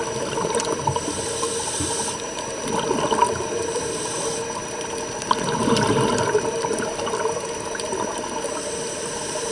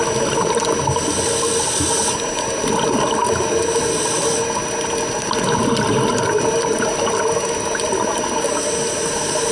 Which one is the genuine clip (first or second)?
second